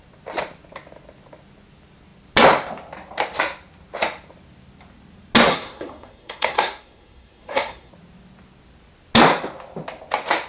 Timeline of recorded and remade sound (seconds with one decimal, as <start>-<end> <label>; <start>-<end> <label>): 0.0-5.5 recorded; 5.5-7.9 remade; 7.9-10.5 recorded